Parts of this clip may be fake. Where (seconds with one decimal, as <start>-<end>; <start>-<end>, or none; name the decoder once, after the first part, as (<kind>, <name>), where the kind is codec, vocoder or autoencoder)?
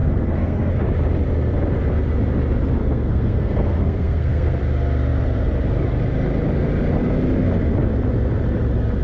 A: 0.0-0.7 (codec, SNAC); 2.8-4.6